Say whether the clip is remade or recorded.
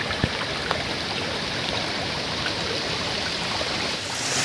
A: recorded